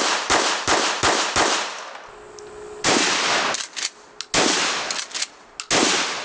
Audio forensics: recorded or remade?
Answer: recorded